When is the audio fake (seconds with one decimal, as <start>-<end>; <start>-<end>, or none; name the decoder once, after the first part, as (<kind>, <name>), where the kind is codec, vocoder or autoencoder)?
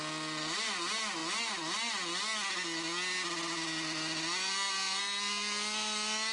none